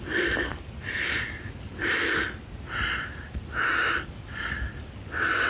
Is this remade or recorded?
recorded